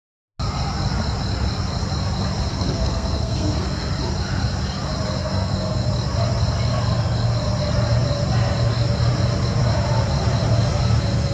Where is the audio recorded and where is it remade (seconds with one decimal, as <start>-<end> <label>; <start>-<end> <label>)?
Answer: 0.0-2.5 recorded; 2.5-3.9 remade; 3.9-5.2 recorded; 5.2-5.9 remade; 5.9-11.3 recorded